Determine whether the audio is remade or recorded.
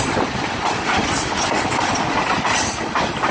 recorded